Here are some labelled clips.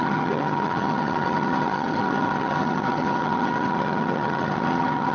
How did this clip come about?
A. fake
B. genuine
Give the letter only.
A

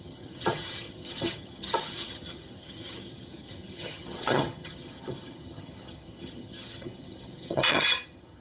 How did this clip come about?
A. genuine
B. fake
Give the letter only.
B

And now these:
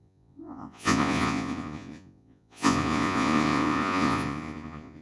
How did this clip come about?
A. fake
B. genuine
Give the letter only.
A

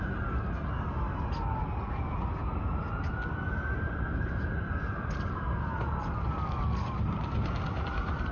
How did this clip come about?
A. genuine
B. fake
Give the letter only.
A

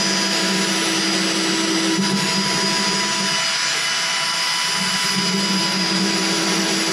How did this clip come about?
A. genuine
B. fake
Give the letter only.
A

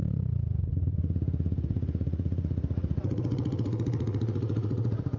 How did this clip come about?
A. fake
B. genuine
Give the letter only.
A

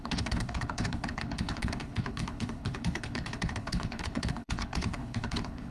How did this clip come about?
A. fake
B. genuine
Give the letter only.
A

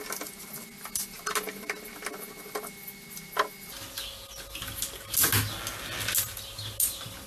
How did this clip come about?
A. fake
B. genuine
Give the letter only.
B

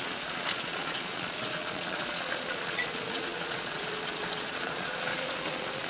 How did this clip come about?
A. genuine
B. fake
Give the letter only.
B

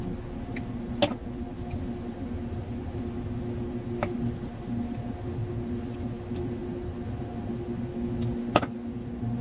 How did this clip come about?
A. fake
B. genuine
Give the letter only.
B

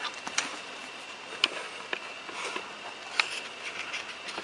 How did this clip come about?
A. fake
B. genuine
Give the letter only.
B